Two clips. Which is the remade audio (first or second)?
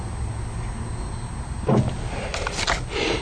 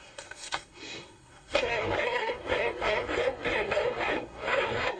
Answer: second